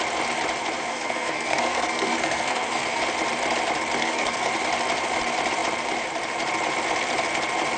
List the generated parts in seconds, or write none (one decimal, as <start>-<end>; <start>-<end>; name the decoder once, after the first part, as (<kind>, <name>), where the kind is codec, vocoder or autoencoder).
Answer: 0.9-3.0 (codec, SNAC); 4.0-4.5